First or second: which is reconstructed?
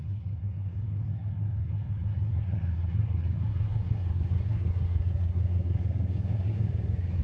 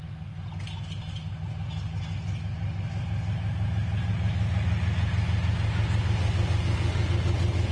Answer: first